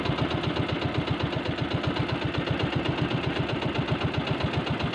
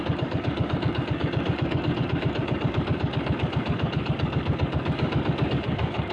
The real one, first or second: first